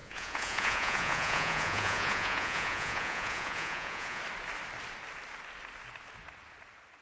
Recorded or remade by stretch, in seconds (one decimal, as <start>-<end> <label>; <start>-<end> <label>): 0.0-4.2 remade; 4.2-7.0 recorded